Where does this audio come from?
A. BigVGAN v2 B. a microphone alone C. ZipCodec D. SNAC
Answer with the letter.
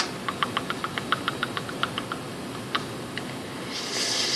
B